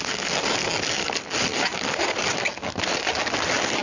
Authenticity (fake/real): real